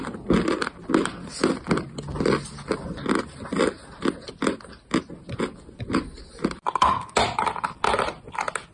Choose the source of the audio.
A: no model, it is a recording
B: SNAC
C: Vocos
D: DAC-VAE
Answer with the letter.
A